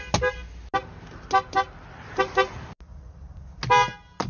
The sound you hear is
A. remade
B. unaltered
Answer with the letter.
B